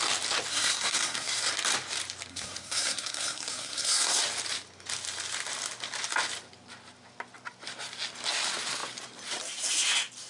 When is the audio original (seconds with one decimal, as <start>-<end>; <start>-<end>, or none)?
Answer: 0.0-0.5; 1.5-2.3; 4.2-10.3